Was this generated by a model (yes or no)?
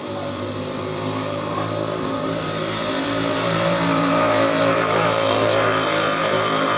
yes